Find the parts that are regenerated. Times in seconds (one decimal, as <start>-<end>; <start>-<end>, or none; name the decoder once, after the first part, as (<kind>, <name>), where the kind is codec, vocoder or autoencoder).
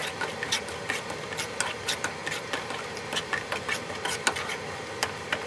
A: none